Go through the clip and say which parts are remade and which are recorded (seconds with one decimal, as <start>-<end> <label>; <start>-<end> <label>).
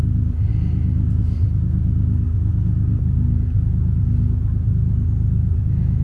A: 0.0-6.0 recorded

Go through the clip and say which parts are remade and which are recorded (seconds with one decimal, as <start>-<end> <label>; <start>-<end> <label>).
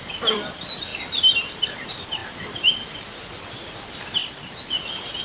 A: 0.0-0.9 remade; 0.9-1.4 recorded; 1.4-4.2 remade; 4.2-4.7 recorded; 4.7-5.2 remade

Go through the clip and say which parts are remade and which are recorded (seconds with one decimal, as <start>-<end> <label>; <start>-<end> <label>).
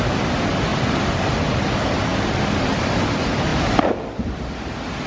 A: 0.0-0.7 recorded; 0.7-1.6 remade; 1.6-2.1 recorded; 2.1-2.6 remade; 2.6-3.5 recorded; 3.5-4.3 remade; 4.3-5.1 recorded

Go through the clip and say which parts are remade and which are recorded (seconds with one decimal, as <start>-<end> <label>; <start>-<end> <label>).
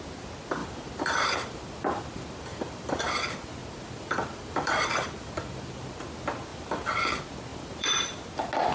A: 0.0-0.6 recorded; 0.6-3.1 remade; 3.1-3.6 recorded; 3.6-6.0 remade; 6.0-6.5 recorded; 6.5-7.1 remade; 7.1-7.5 recorded; 7.5-8.2 remade; 8.2-8.7 recorded